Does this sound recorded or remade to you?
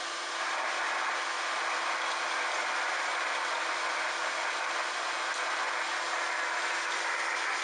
recorded